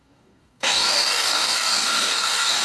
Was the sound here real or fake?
fake